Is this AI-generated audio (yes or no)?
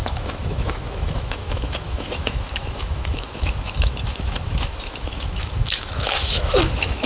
yes